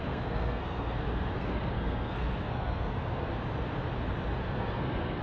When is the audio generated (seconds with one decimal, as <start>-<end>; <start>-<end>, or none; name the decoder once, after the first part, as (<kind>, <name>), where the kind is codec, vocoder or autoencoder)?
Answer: 0.0-3.3 (codec, SNAC); 4.4-5.2